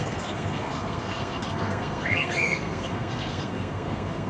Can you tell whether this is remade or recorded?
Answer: remade